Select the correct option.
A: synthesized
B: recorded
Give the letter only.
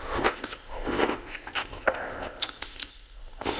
A